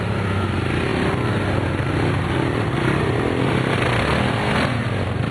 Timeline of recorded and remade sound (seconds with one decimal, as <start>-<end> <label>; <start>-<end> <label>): 0.0-5.3 recorded